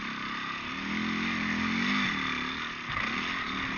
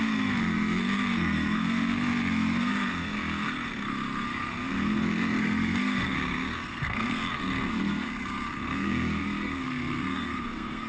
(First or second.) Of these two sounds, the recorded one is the first